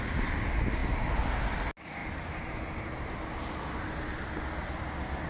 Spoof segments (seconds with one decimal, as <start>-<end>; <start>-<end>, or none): none